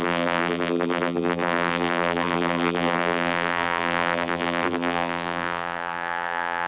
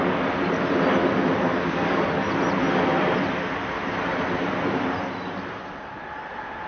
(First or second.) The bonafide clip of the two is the second